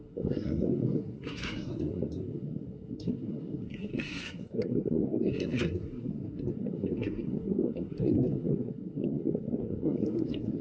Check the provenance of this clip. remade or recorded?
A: remade